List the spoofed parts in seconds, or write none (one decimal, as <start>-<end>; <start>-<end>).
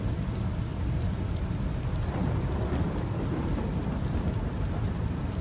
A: 0.0-5.4